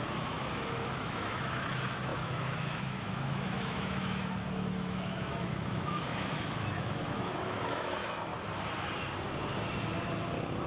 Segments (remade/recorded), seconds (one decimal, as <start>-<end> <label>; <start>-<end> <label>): 0.0-8.3 remade; 8.3-10.7 recorded

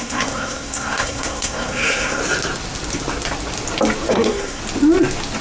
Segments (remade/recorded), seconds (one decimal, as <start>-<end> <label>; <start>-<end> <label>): 0.0-2.2 remade; 2.2-4.1 recorded; 4.1-4.6 remade; 4.6-5.4 recorded

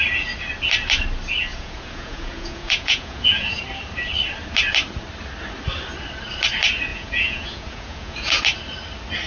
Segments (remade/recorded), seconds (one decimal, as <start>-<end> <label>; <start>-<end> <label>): 0.0-1.5 recorded; 1.5-3.6 remade; 3.6-6.9 recorded; 6.9-8.4 remade; 8.4-9.3 recorded